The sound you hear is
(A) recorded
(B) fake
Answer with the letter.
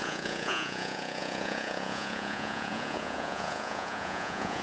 B